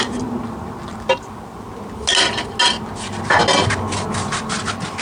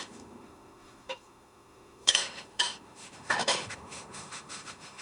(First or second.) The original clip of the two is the first